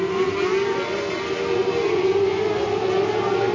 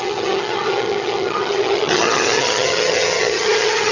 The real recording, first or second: first